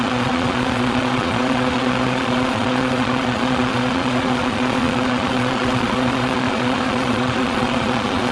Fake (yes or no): yes